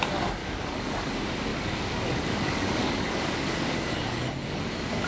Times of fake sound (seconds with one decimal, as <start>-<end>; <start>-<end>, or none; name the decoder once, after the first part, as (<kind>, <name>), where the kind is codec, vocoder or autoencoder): 0.4-1.1 (codec, DAC); 1.5-4.6